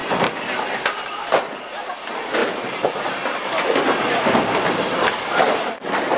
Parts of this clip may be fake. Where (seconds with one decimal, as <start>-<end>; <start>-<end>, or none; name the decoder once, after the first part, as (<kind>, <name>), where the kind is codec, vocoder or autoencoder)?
2.4-6.2 (vocoder, BigVGAN v2)